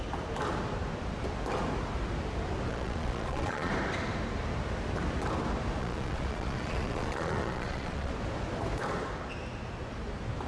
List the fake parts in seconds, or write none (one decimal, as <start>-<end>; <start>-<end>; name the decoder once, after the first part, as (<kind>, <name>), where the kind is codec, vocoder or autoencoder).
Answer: 2.7-3.7 (vocoder, Vocos); 5.8-8.1